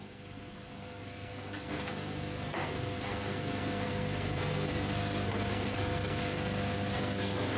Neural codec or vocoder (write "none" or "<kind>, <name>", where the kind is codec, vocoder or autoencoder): codec, SNAC